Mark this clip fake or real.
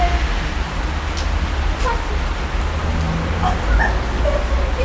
real